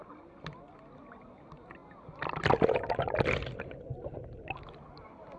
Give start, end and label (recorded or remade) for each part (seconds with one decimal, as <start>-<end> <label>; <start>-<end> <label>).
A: 0.0-5.4 recorded